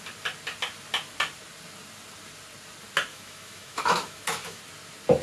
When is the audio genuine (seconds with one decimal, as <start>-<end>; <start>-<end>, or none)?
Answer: 0.0-3.1; 4.6-5.2